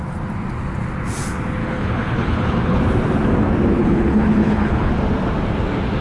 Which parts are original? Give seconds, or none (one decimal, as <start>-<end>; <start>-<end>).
0.0-1.6; 2.8-3.8; 4.9-6.0